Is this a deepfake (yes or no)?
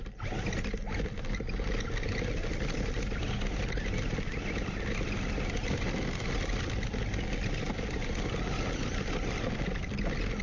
no